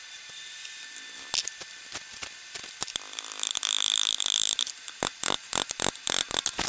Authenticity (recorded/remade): recorded